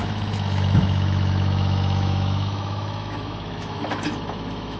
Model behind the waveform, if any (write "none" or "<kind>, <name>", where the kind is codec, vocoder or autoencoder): autoencoder, DAC-VAE